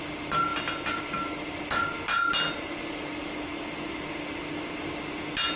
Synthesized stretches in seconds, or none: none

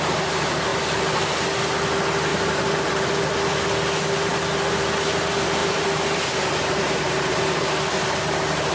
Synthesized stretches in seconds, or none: 0.7-1.6 (vocoder, BigVGAN v2); 2.3-3.0; 5.6-7.7

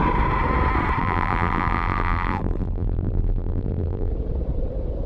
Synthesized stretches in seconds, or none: 1.0-4.1 (vocoder, BigVGAN v2)

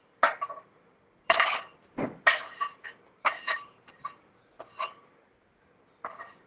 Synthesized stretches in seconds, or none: 2.4-5.2 (vocoder, BigVGAN v2)